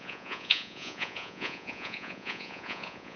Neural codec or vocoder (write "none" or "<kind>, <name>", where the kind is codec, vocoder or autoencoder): vocoder, Vocos